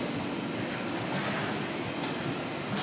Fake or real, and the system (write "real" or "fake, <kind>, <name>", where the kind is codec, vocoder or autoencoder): real